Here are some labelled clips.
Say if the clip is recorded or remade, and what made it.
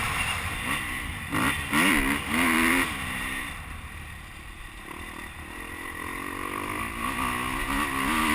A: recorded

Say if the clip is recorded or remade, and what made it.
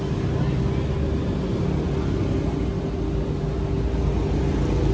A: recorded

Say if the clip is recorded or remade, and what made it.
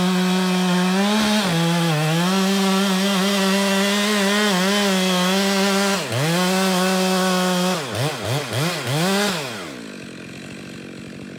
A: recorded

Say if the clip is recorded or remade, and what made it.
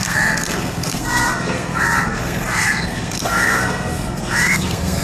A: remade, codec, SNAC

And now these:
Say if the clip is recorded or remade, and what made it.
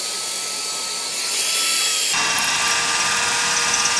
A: recorded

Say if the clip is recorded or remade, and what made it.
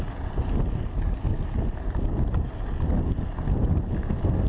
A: recorded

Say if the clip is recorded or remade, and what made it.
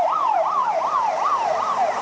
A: remade, vocoder, BigVGAN v2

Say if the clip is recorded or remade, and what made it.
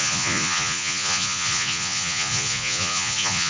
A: remade, vocoder, Vocos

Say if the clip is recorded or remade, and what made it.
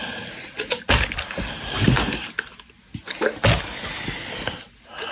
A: recorded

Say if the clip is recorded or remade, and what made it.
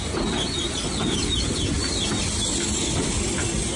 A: recorded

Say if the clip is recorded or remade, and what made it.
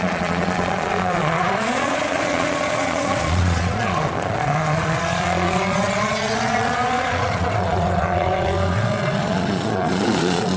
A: remade, vocoder, Vocos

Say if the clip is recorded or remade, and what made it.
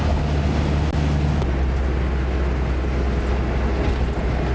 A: recorded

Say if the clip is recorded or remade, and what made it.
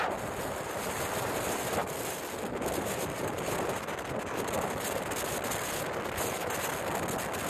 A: recorded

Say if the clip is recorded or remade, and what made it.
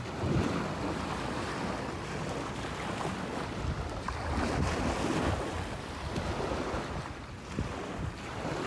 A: recorded